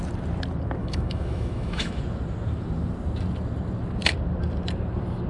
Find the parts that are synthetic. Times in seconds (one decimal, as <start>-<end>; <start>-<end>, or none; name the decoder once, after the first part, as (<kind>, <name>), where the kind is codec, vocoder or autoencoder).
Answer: 0.8-2.0 (autoencoder, DAC-VAE)